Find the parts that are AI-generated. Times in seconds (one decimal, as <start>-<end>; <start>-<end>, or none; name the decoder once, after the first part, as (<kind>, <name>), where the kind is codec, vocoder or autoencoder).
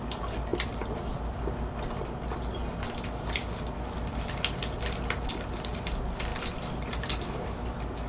0.5-5.3 (vocoder, BigVGAN v2); 6.3-8.1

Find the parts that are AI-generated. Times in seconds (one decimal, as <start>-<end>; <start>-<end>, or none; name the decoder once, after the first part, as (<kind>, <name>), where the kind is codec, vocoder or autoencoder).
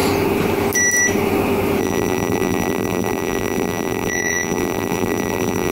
1.8-5.7 (vocoder, BigVGAN v2)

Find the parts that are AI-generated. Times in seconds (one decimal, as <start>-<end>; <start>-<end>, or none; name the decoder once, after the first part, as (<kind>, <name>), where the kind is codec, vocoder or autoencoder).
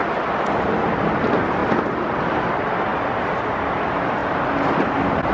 0.7-1.6 (vocoder, BigVGAN v2); 2.3-2.9; 3.7-4.2